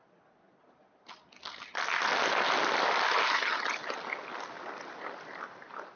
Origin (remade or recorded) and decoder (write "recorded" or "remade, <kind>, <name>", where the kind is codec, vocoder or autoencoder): recorded